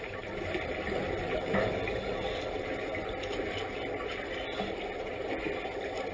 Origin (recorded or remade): recorded